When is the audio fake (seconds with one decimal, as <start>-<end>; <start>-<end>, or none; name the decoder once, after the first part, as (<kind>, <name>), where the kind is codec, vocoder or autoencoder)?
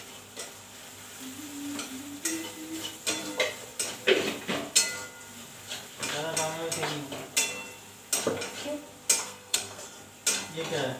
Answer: 9.2-9.8 (codec, SNAC)